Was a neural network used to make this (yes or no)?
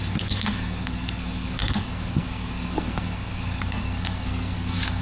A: yes